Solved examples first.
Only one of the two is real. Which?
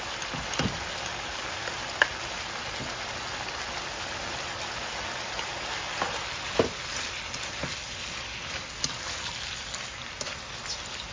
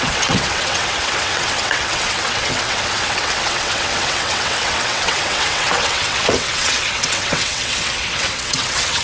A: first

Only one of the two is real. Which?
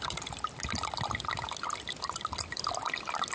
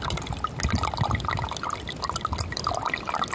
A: second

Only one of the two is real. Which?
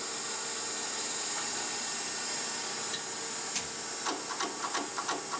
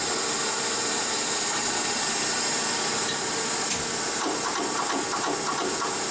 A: first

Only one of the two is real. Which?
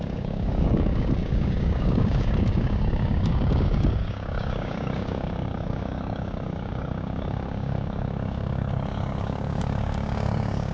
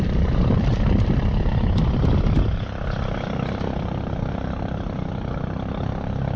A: second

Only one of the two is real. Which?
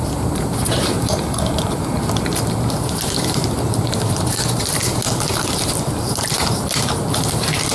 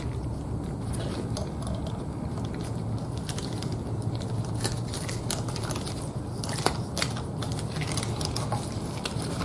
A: second